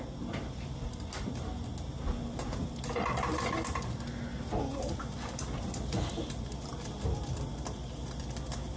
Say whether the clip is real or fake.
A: real